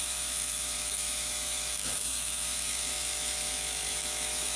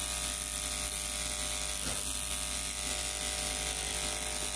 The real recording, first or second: second